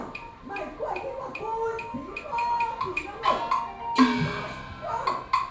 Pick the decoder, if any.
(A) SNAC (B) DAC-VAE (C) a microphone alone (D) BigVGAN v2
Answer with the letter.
C